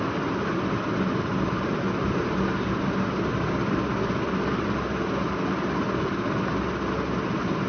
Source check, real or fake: real